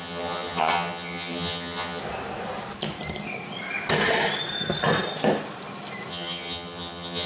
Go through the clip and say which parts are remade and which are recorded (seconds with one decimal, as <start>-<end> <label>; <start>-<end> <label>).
0.0-2.0 remade; 2.0-6.1 recorded; 6.1-7.3 remade